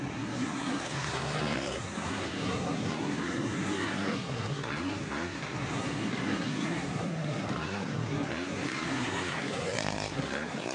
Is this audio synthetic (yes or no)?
yes